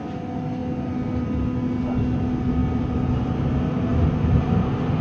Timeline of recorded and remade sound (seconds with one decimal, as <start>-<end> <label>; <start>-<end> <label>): 0.0-5.0 recorded